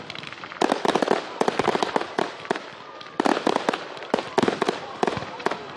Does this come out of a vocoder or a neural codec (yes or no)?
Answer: yes